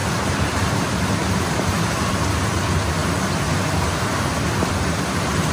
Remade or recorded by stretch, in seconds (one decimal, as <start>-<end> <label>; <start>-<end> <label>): 0.0-2.1 remade; 2.1-5.5 recorded

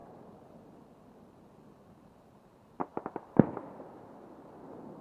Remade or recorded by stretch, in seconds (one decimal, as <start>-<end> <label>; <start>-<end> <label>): 0.0-5.0 recorded